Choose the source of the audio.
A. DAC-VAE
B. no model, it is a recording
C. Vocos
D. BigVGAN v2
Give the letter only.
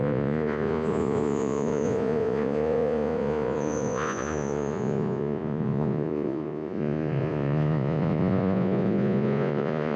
C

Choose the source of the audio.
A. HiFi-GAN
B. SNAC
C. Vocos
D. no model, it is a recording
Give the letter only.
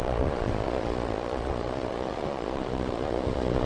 C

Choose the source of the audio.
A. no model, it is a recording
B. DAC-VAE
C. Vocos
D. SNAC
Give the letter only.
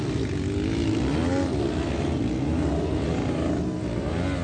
A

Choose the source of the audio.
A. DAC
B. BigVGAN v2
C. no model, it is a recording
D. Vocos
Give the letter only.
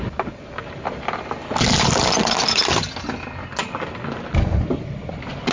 C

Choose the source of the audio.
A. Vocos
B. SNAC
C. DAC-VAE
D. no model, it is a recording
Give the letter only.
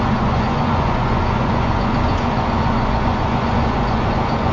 A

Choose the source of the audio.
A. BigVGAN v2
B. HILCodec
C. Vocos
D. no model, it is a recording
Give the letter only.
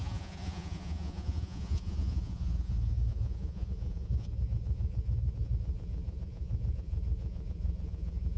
C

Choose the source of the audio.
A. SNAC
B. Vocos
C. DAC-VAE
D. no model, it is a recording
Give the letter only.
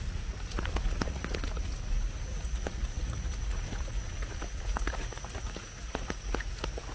B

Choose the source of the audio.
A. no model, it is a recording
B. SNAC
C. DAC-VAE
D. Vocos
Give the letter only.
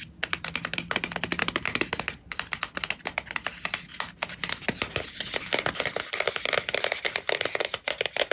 A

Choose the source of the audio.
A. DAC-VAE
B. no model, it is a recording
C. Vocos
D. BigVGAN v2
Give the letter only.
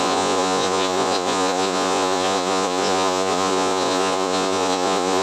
C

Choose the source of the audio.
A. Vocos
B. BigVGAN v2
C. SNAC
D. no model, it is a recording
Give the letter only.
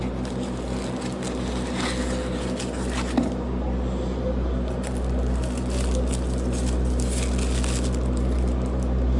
D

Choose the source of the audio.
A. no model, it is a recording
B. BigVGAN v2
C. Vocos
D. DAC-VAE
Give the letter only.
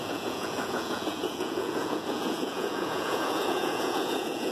C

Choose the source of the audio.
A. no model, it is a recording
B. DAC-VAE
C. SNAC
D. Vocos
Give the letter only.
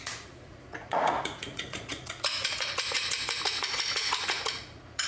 D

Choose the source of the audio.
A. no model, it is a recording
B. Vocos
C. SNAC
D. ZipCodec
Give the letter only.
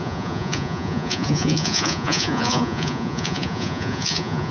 B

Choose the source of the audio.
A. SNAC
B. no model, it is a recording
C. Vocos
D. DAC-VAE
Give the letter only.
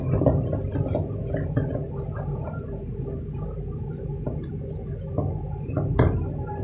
B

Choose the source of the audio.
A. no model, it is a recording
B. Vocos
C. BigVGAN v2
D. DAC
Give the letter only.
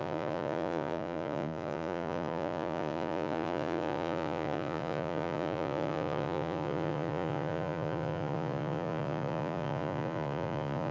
B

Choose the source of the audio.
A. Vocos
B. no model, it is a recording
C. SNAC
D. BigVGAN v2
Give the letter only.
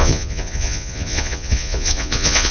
A